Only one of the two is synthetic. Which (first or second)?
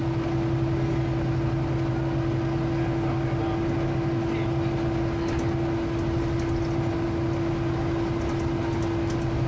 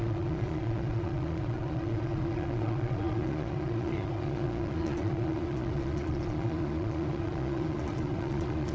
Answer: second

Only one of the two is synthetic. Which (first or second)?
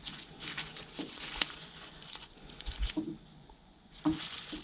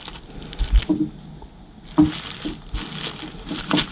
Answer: first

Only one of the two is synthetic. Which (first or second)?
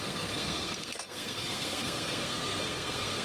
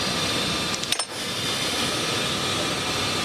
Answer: first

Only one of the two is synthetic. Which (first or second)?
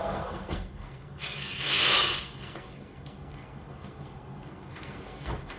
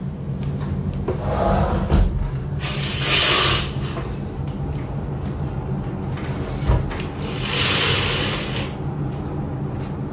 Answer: first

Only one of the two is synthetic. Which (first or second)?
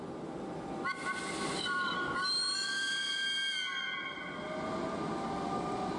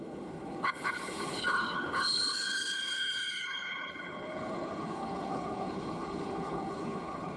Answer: second